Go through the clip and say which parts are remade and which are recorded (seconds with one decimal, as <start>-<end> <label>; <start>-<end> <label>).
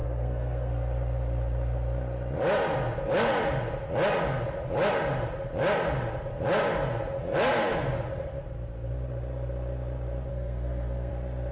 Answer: 0.0-0.7 remade; 0.7-10.3 recorded; 10.3-11.1 remade; 11.1-11.5 recorded